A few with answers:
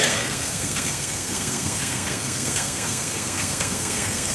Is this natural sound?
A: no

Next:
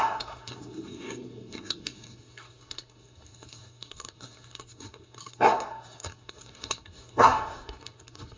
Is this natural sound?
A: no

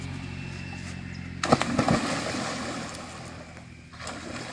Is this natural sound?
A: yes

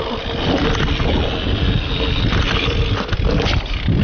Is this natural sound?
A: yes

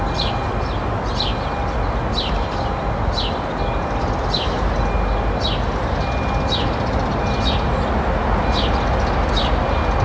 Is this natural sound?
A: yes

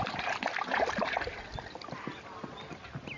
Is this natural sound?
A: yes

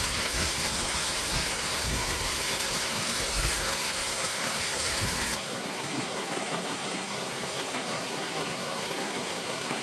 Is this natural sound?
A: no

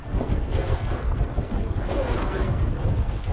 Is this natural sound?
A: no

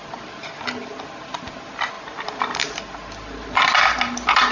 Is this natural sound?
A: yes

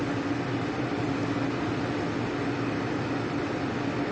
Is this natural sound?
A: yes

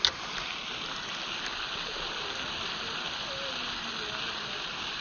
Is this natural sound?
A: yes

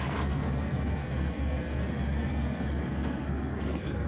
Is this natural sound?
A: no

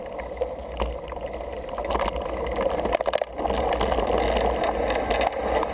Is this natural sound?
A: yes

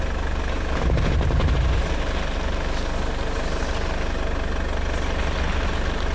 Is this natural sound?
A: yes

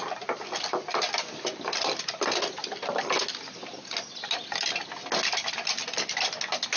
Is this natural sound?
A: yes